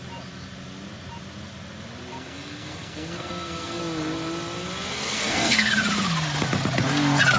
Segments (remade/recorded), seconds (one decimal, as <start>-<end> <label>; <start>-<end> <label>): 0.0-2.1 recorded; 2.1-3.8 remade; 3.8-4.9 recorded; 4.9-5.7 remade; 5.7-7.4 recorded